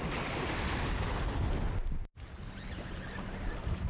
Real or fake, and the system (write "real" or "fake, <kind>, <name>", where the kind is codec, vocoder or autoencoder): real